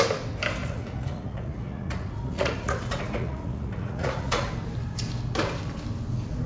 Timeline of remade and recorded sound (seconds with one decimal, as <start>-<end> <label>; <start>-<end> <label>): 0.0-0.6 recorded; 0.6-4.5 remade; 4.5-6.5 recorded